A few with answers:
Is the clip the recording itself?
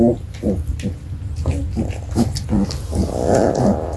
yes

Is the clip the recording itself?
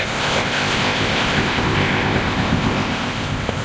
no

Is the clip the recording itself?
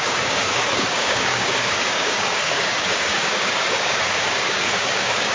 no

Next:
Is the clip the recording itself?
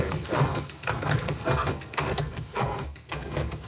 no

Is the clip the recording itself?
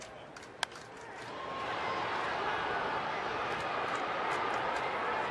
yes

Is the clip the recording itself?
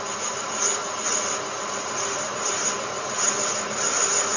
yes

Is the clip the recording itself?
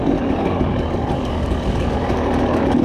no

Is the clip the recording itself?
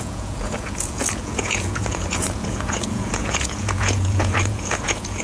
no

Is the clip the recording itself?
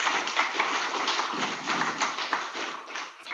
yes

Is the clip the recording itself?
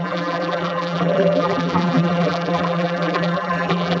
no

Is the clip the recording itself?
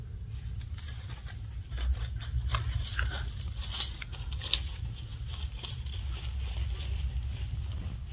yes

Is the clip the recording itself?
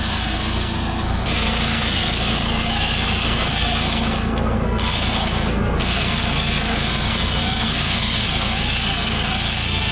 no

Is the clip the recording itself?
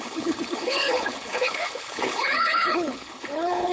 no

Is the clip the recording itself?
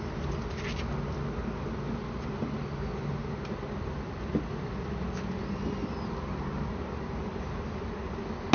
yes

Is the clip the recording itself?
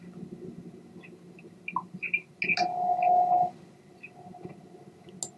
yes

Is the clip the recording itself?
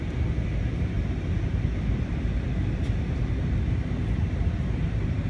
yes